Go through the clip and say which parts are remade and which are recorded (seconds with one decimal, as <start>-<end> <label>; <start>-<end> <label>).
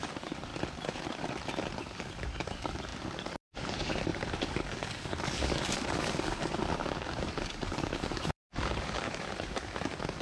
0.0-0.5 remade; 0.5-1.8 recorded; 1.8-10.2 remade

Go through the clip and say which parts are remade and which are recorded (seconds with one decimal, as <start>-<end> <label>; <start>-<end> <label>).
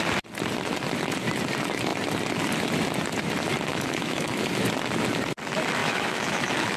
0.0-3.7 recorded; 3.7-4.5 remade; 4.5-5.8 recorded; 5.8-6.8 remade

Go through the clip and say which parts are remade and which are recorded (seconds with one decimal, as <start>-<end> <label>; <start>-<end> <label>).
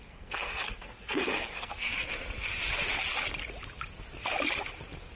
0.0-1.9 remade; 1.9-5.2 recorded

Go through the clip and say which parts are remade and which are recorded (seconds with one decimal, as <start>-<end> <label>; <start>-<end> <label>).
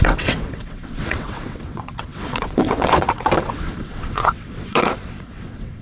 0.0-5.8 remade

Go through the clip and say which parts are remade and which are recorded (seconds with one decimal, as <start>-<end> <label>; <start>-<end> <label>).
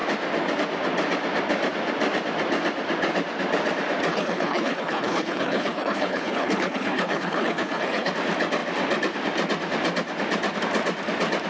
0.0-4.1 recorded; 4.1-8.1 remade; 8.1-11.5 recorded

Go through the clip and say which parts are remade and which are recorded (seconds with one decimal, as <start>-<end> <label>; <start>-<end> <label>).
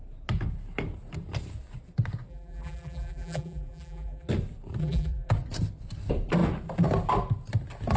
0.0-2.3 recorded; 2.3-4.3 remade; 4.3-4.8 recorded; 4.8-5.3 remade; 5.3-8.0 recorded